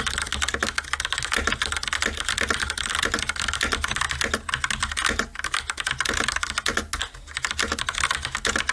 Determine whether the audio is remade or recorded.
recorded